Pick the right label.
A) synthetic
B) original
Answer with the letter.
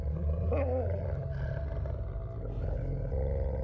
B